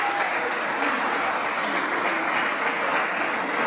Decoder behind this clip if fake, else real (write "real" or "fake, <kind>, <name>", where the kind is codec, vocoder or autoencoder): real